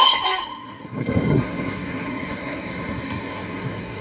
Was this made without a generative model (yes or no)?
no